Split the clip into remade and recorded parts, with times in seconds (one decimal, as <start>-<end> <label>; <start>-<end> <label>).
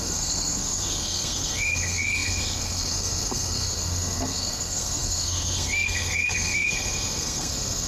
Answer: 0.0-7.9 remade